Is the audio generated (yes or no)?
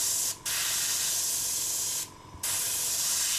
no